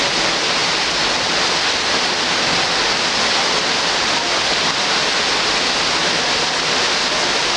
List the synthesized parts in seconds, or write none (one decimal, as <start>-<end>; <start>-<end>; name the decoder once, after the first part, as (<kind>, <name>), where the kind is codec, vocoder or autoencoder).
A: none